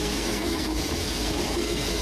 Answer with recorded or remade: remade